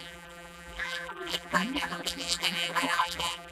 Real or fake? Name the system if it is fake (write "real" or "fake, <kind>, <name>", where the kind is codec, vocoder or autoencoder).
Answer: fake, vocoder, BigVGAN v2